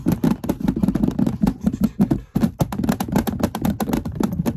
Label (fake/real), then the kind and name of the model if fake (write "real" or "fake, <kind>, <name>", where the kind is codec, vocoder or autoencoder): real